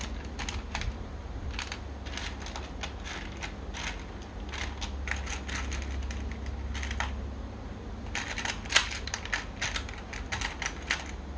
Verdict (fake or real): real